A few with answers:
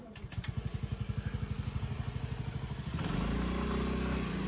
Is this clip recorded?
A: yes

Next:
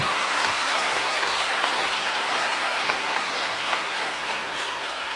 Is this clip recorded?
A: no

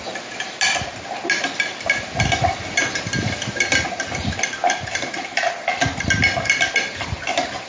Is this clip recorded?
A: yes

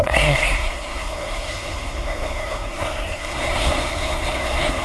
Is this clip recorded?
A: no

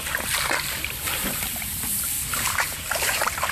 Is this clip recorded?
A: no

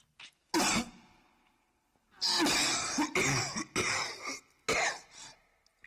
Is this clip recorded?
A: yes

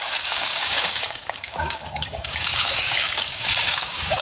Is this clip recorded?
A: no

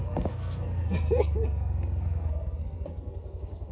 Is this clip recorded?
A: no